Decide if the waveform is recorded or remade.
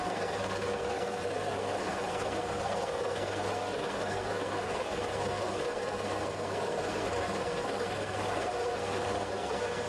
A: remade